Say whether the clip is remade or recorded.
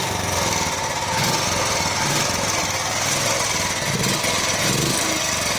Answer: recorded